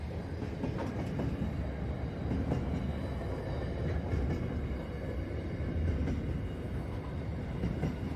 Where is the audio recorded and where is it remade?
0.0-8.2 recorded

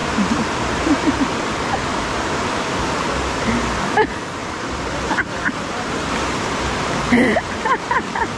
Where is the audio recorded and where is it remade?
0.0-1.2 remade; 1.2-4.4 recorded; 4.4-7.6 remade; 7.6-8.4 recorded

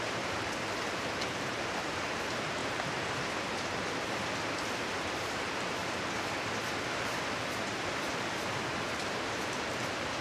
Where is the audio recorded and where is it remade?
0.0-2.6 remade; 2.6-5.1 recorded; 5.1-5.8 remade; 5.8-8.8 recorded; 8.8-10.2 remade

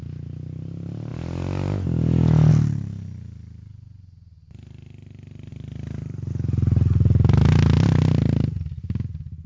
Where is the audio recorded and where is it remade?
0.0-5.5 recorded; 5.5-6.3 remade; 6.3-9.5 recorded

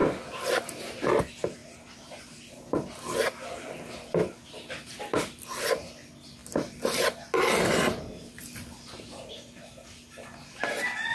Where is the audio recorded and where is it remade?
0.0-0.6 remade; 0.6-6.4 recorded; 6.4-9.6 remade; 9.6-11.1 recorded

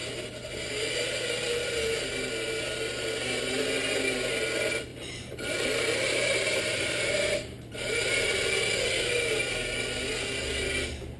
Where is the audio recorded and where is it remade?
0.0-4.9 recorded; 4.9-8.3 remade; 8.3-11.2 recorded

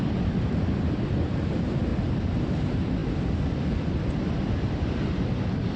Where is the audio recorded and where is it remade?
0.0-5.8 recorded